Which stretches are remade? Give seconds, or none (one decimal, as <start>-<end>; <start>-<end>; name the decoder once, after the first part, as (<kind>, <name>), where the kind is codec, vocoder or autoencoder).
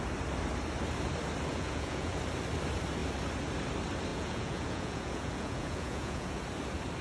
1.5-2.2 (vocoder, Vocos); 4.1-6.4